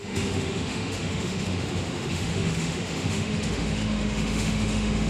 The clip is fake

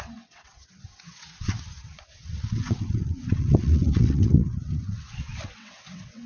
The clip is fake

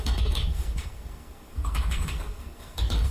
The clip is fake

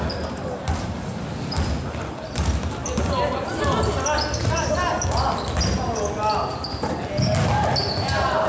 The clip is real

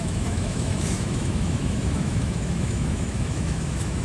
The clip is fake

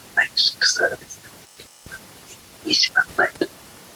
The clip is fake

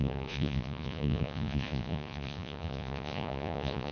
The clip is fake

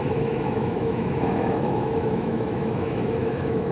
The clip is fake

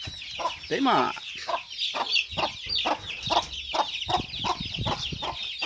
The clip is real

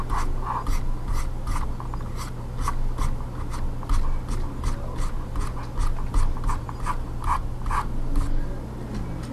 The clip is real